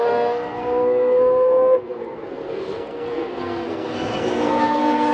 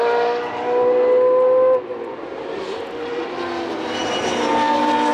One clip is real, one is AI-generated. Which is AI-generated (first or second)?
first